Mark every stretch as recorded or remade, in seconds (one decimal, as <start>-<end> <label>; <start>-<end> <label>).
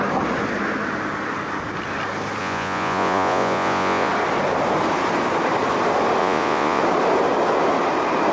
0.0-2.4 recorded; 2.4-4.1 remade; 4.1-6.2 recorded; 6.2-6.8 remade; 6.8-8.3 recorded